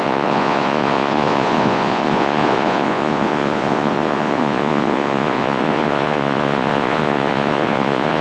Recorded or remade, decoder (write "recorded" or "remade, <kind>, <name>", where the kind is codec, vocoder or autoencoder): remade, vocoder, Vocos